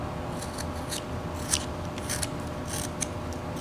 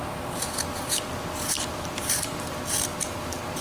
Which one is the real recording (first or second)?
first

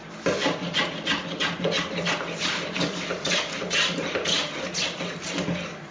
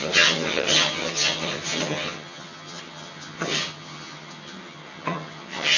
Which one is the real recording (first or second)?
first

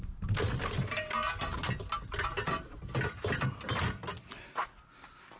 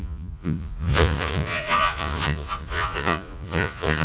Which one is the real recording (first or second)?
first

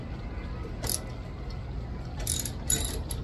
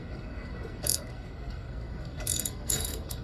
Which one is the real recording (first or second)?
first